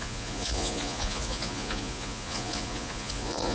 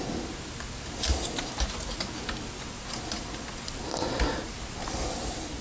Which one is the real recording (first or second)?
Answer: second